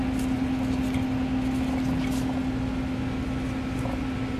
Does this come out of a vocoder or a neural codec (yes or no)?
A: no